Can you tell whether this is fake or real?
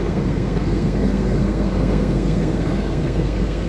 fake